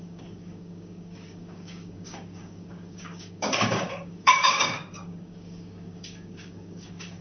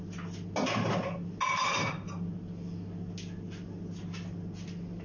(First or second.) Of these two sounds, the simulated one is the first